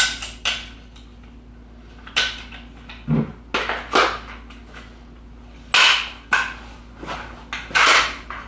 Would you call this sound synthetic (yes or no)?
no